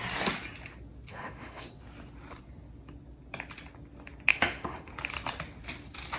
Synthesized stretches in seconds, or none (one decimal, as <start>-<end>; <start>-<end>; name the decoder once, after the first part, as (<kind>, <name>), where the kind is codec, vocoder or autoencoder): 1.1-1.7 (autoencoder, DAC-VAE); 4.3-4.9